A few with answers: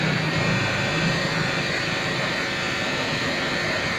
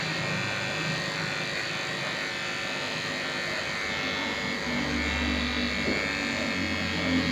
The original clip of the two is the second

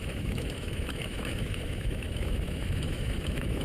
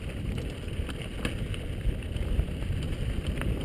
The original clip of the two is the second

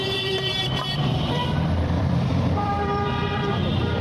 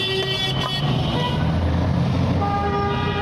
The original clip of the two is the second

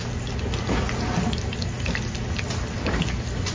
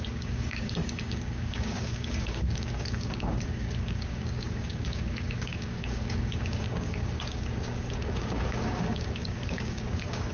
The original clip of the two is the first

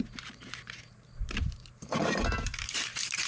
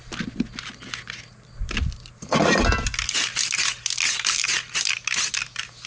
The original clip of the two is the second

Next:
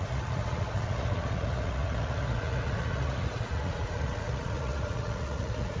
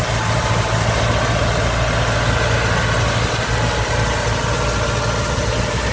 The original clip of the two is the second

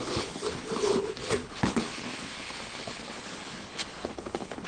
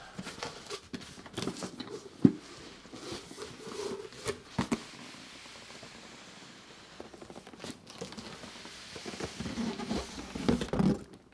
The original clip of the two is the second